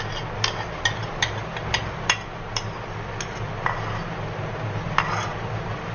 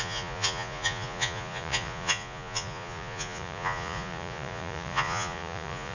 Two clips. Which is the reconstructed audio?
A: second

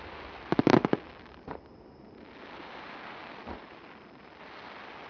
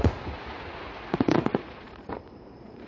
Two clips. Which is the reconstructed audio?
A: second